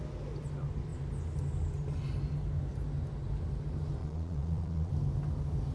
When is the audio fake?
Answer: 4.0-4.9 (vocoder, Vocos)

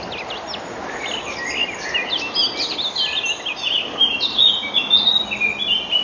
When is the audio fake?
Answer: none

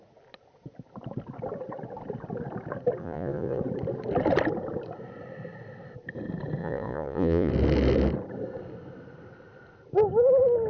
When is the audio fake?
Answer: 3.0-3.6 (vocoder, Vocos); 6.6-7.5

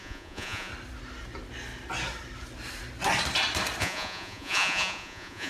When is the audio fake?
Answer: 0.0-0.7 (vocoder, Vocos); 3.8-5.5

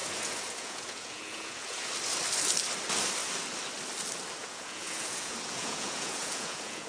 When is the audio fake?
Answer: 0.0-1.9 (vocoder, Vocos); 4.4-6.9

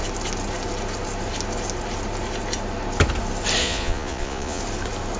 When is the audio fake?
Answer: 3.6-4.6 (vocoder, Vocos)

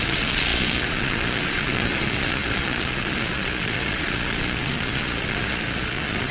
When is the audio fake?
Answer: 0.0-6.3 (vocoder, Vocos)